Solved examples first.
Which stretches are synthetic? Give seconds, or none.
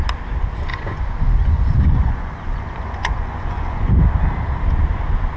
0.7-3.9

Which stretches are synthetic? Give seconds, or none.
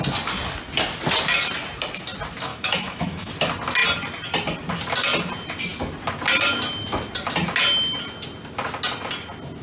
2.5-3.3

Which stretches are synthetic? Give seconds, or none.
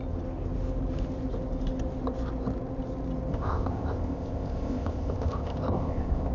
3.3-6.3